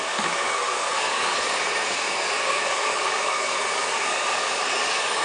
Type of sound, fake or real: fake